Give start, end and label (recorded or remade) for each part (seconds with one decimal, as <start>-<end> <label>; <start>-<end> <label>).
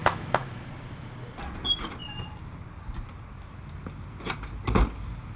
0.0-0.7 remade; 0.7-5.4 recorded